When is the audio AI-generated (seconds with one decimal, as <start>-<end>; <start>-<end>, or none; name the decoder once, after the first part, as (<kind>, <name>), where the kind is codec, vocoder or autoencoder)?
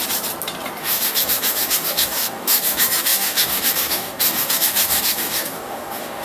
0.8-6.2 (codec, DAC)